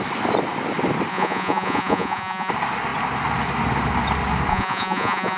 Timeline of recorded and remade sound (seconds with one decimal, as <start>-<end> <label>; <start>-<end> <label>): 0.0-1.1 recorded; 1.1-2.5 remade; 2.5-4.5 recorded; 4.5-5.4 remade

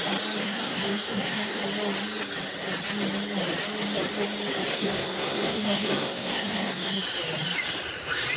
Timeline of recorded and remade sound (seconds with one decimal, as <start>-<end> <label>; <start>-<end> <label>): 0.0-0.4 recorded; 0.4-1.6 remade; 1.6-4.7 recorded; 4.7-7.0 remade; 7.0-8.4 recorded